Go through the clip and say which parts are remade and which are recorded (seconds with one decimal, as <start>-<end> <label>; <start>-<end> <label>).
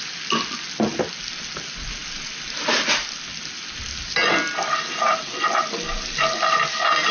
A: 0.0-7.1 recorded